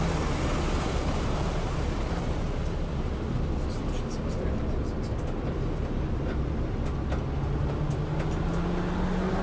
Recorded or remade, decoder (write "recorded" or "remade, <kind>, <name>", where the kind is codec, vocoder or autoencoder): recorded